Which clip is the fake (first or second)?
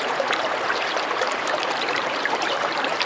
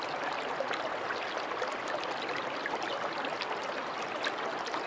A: first